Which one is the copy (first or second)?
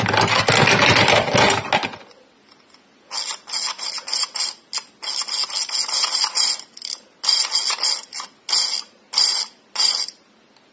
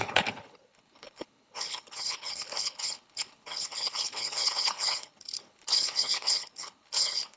second